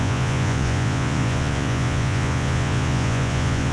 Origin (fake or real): fake